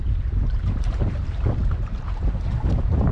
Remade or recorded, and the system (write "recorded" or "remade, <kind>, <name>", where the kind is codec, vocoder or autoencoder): remade, vocoder, BigVGAN v2